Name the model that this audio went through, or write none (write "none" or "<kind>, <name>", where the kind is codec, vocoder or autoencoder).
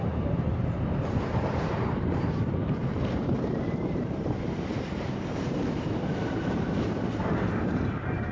vocoder, BigVGAN v2